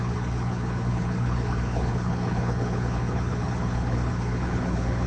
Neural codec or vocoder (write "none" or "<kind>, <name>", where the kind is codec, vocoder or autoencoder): codec, HILCodec